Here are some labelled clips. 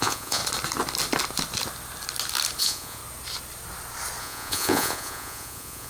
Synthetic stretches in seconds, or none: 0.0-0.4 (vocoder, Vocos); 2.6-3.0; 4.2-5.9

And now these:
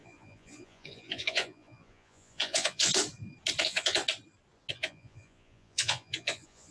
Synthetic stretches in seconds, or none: 0.0-2.9 (vocoder, Vocos); 3.6-4.0; 4.7-6.7

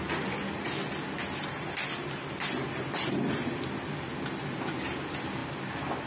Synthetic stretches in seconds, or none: none

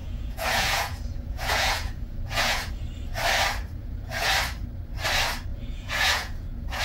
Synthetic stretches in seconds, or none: 0.0-2.7 (vocoder, Vocos); 3.8-4.3; 5.5-6.8